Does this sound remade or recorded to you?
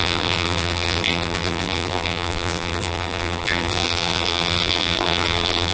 remade